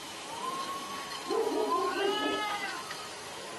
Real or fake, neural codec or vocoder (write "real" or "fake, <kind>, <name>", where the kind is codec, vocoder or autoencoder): fake, autoencoder, DAC-VAE